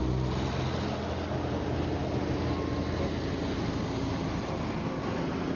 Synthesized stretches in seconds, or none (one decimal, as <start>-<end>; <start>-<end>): none